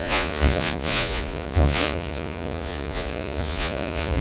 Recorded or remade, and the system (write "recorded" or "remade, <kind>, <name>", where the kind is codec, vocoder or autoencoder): remade, vocoder, Vocos